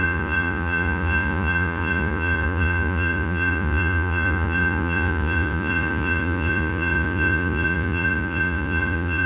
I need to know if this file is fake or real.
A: fake